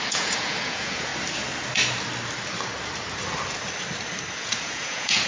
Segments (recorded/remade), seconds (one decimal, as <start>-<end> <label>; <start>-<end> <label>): 0.0-1.1 remade; 1.1-4.3 recorded; 4.3-5.3 remade